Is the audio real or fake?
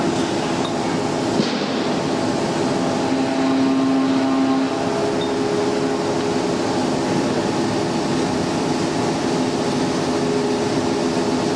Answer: real